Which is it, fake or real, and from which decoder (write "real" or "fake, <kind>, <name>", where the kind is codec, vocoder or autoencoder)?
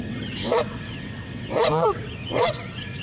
fake, vocoder, WaveNeXt